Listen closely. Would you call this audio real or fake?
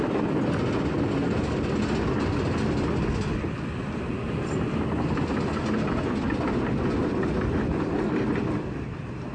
real